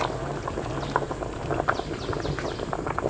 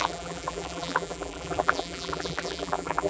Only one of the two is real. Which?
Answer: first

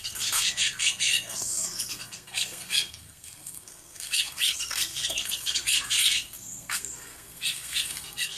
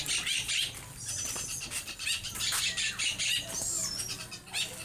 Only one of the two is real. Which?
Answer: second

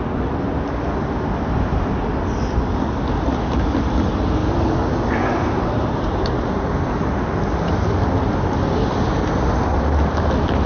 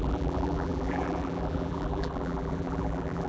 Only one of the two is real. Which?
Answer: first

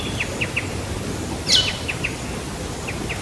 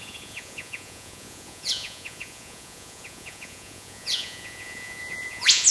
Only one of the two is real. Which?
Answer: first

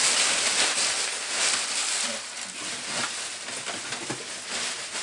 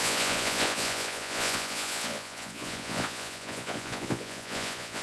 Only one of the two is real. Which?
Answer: first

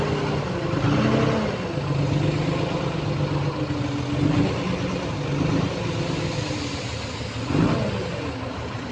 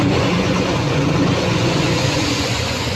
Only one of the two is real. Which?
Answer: first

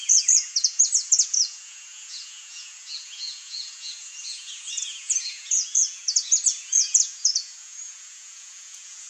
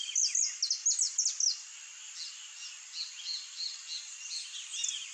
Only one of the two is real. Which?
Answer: second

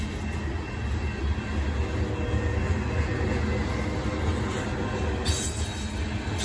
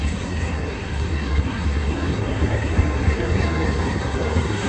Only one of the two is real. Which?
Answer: first